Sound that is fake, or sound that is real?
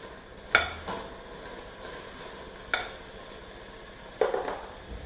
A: real